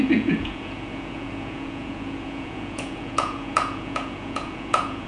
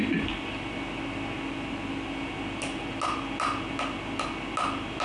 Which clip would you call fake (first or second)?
first